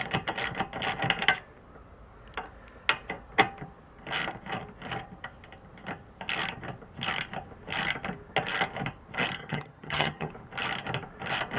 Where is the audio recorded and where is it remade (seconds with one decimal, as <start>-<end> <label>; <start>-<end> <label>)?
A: 0.0-9.4 recorded; 9.4-10.3 remade; 10.3-11.6 recorded